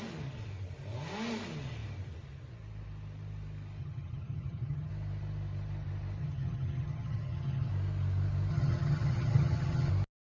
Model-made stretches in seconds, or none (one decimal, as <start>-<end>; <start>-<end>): 3.8-4.9; 6.2-7.7; 8.5-9.9